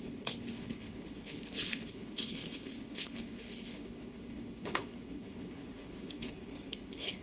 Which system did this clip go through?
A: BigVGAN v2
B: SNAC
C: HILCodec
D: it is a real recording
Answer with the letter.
C